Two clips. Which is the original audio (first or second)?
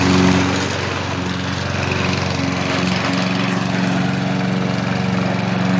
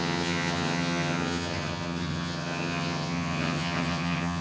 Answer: first